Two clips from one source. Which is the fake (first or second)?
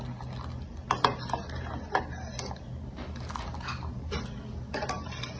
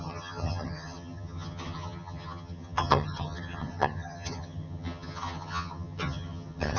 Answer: second